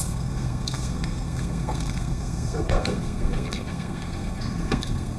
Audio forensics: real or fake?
fake